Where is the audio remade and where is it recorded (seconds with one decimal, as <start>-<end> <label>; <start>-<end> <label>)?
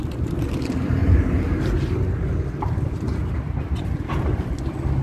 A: 0.0-5.0 recorded